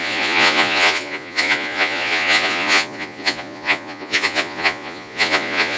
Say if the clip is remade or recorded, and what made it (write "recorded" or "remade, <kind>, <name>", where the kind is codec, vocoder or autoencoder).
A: remade, vocoder, Vocos